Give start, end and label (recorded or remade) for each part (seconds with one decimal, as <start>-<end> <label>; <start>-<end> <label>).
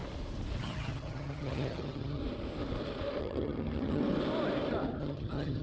0.0-0.6 recorded; 0.6-2.2 remade; 2.2-3.2 recorded; 3.2-4.0 remade; 4.0-5.0 recorded; 5.0-5.6 remade